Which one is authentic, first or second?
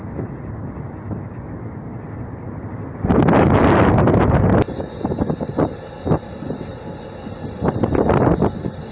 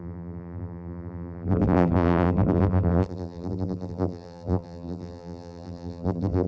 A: first